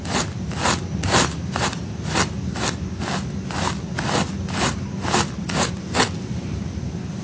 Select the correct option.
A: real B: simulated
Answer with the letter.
A